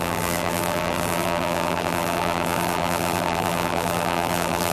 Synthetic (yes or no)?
yes